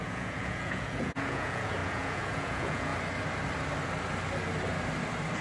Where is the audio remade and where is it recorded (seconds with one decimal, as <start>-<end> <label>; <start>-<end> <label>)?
0.0-2.9 remade; 2.9-5.4 recorded